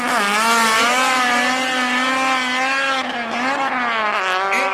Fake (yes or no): no